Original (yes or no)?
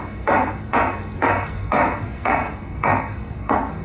no